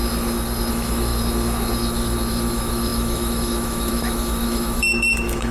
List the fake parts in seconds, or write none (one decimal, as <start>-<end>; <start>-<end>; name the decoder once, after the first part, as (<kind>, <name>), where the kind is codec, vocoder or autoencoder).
0.7-1.1 (autoencoder, DAC-VAE); 2.3-5.5